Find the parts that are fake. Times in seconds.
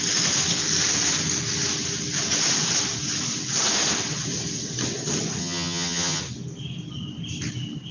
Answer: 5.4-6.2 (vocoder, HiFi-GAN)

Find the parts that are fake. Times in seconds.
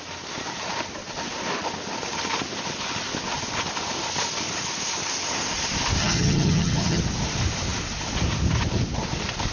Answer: 6.0-7.0 (vocoder, HiFi-GAN)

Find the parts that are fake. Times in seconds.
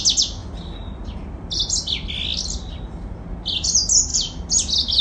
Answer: none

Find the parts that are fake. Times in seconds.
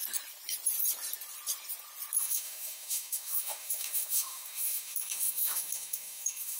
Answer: 2.2-6.6 (autoencoder, DAC-VAE)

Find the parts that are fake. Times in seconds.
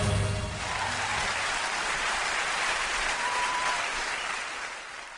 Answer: 1.1-4.2 (vocoder, BigVGAN v2)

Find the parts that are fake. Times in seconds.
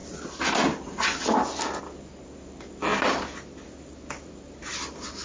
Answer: none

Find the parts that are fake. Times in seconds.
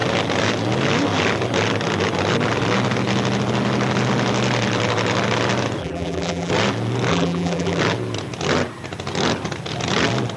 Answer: 5.8-6.5 (vocoder, BigVGAN v2); 7.1-7.8